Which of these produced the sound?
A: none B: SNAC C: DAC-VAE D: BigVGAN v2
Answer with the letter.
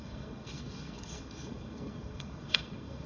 B